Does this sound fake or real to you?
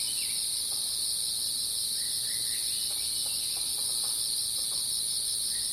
real